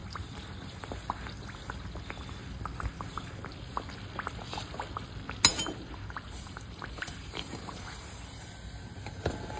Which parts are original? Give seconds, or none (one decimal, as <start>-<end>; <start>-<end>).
0.0-5.5; 8.5-9.6